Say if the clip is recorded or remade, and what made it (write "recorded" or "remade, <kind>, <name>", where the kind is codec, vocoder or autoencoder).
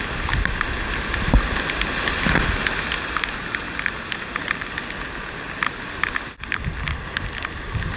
recorded